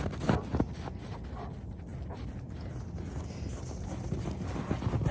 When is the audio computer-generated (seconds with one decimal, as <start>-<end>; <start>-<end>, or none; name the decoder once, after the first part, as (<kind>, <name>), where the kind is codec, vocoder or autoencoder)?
none